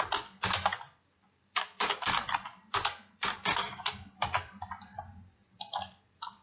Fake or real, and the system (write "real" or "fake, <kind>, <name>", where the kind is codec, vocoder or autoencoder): fake, vocoder, BigVGAN v2